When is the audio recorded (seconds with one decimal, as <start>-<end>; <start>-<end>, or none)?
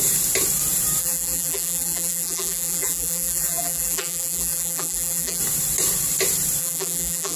0.0-1.0; 5.4-6.6